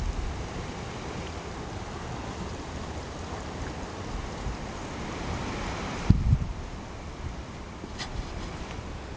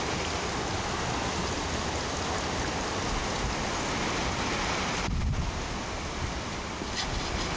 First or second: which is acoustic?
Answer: second